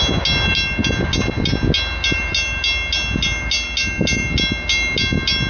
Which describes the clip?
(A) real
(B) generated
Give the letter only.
A